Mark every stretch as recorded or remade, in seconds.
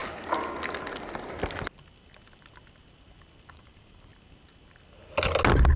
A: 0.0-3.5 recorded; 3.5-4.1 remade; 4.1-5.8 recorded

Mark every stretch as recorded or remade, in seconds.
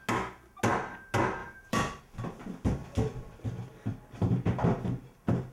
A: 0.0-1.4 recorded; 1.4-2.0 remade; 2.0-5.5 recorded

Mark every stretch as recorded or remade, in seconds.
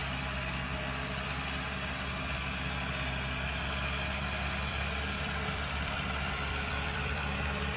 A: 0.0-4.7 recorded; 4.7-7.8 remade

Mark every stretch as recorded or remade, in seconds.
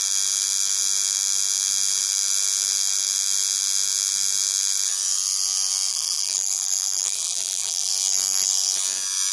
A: 0.0-5.9 recorded; 5.9-7.9 remade; 7.9-9.3 recorded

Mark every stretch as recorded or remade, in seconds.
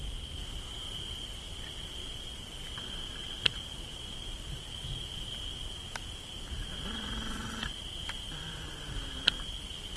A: 0.0-0.4 remade; 0.4-1.8 recorded; 1.8-10.0 remade